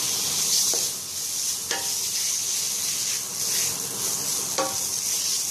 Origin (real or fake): real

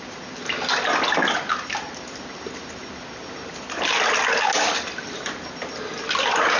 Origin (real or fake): real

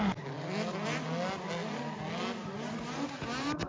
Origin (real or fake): real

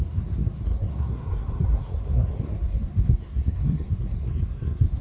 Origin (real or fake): fake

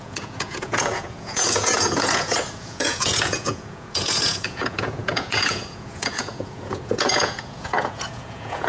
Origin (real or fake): fake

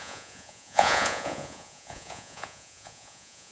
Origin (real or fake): fake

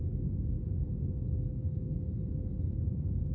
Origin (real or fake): fake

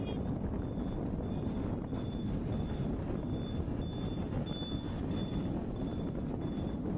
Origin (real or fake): real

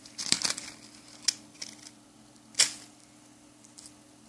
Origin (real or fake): real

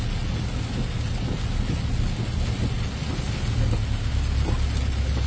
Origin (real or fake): real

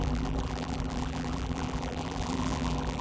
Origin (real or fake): fake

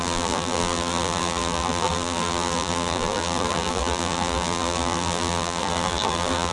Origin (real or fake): fake